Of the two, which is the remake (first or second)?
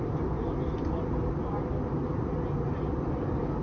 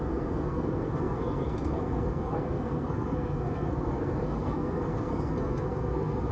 second